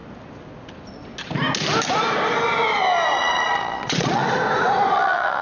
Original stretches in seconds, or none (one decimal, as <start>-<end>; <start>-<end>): 0.0-3.2; 4.2-4.9